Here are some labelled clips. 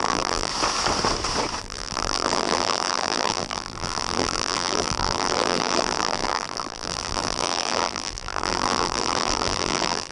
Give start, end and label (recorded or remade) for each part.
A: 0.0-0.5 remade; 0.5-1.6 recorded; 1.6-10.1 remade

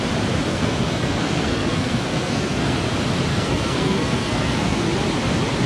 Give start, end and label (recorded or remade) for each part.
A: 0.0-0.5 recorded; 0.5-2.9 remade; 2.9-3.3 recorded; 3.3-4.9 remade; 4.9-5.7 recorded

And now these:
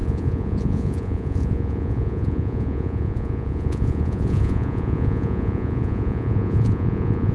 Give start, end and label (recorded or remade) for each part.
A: 0.0-7.3 remade

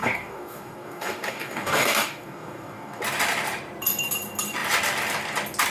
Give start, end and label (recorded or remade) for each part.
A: 0.0-3.0 remade; 3.0-5.7 recorded

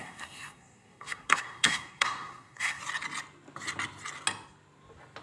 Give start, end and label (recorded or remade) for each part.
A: 0.0-2.8 remade; 2.8-5.2 recorded

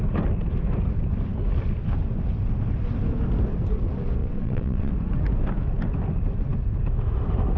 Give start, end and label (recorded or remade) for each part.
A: 0.0-4.2 recorded; 4.2-4.9 remade; 4.9-7.6 recorded

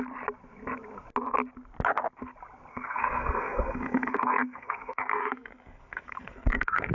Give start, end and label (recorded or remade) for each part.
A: 0.0-2.7 recorded; 2.7-6.9 remade

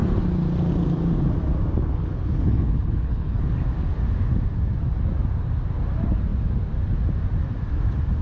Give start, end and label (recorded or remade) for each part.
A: 0.0-1.8 recorded; 1.8-3.4 remade; 3.4-8.2 recorded